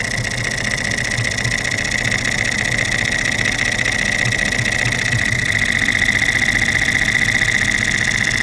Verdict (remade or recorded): recorded